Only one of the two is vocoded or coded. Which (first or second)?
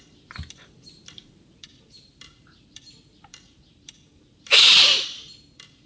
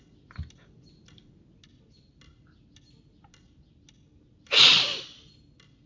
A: first